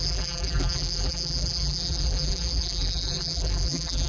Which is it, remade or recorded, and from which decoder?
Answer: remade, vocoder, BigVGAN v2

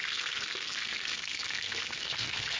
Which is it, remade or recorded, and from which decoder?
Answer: remade, codec, SNAC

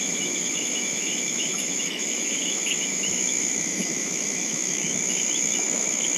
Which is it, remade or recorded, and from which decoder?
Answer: remade, autoencoder, DAC-VAE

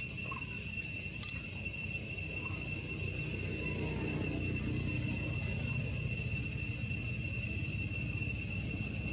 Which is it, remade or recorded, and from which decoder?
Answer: recorded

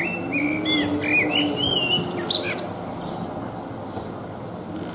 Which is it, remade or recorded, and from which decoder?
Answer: recorded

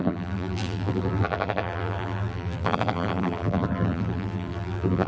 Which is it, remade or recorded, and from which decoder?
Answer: remade, vocoder, BigVGAN v2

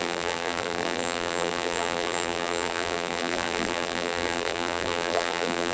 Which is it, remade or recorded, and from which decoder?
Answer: remade, vocoder, BigVGAN v2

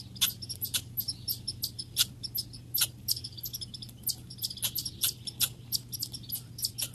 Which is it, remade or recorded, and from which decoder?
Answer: recorded